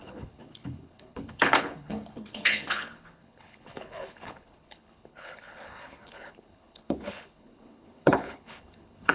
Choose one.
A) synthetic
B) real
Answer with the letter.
A